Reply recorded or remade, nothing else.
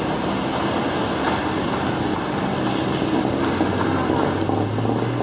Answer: recorded